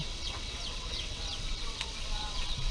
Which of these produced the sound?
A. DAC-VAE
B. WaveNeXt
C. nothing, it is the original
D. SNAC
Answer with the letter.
B